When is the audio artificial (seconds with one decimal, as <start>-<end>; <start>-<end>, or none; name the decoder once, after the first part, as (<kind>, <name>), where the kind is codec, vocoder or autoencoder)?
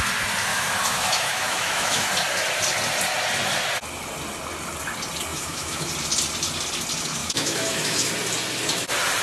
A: 0.5-2.1 (autoencoder, DAC-VAE); 5.3-5.9; 7.2-8.1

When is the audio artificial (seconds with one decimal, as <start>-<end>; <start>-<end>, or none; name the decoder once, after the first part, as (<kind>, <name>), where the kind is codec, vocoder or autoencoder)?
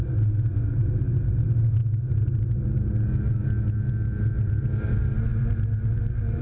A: none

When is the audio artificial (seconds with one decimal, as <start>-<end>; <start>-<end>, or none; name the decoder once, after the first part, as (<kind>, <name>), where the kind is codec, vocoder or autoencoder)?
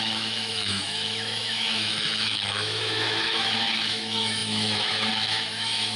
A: 0.0-6.0 (autoencoder, DAC-VAE)